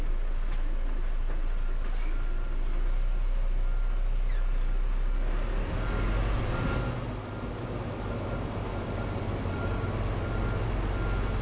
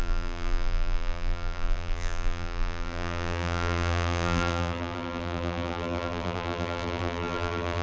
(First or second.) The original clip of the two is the first